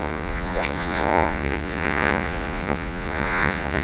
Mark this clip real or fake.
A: fake